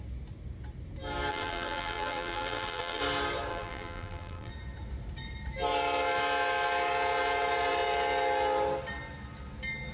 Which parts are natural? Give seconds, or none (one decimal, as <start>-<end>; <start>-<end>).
0.0-1.3; 3.0-3.5; 4.5-9.9